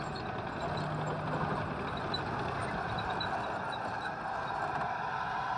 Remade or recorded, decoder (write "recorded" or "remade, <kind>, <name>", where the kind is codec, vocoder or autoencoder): recorded